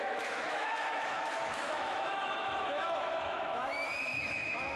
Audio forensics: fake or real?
fake